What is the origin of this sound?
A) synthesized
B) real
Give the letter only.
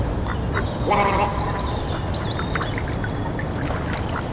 B